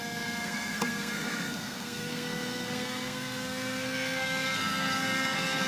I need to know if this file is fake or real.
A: fake